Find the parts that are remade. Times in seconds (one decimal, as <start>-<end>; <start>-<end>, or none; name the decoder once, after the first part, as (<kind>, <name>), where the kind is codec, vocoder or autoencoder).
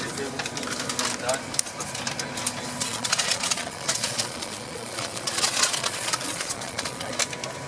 2.8-7.1 (vocoder, Vocos)